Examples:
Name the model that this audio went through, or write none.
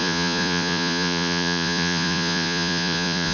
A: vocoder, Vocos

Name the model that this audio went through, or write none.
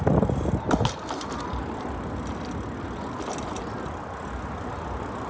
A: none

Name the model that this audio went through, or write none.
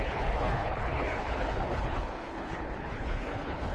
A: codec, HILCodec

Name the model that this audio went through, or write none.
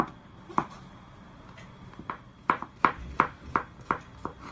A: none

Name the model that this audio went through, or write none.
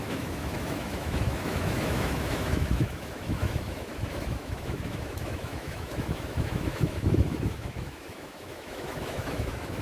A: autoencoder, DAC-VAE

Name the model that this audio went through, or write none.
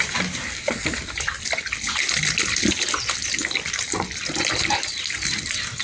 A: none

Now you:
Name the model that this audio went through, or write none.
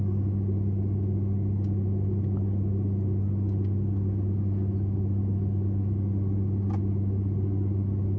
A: none